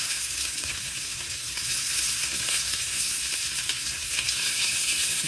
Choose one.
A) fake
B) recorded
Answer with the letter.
A